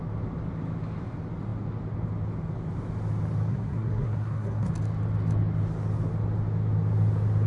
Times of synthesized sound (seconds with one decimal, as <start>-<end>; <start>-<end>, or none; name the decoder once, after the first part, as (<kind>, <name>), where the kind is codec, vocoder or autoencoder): 3.5-4.7 (codec, SNAC)